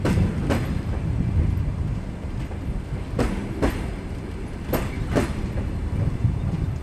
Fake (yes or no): no